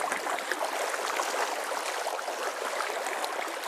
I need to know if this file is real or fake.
real